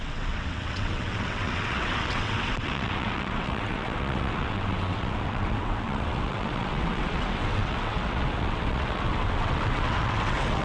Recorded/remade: remade